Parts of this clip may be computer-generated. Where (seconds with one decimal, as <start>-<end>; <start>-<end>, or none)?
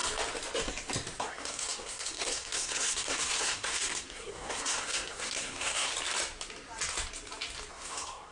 1.2-5.9; 7.7-8.3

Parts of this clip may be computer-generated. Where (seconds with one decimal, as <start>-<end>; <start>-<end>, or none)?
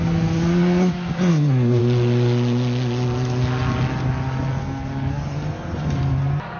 1.3-1.8; 4.6-5.2